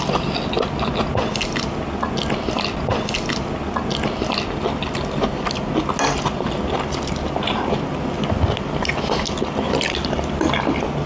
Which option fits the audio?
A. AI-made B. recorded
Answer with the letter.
B